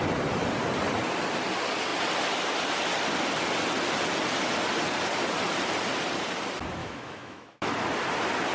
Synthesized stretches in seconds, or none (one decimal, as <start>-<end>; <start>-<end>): 6.8-7.7